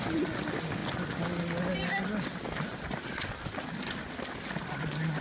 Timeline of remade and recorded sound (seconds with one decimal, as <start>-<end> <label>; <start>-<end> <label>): 0.0-5.2 recorded